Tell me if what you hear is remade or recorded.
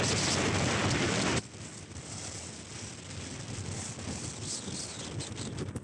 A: recorded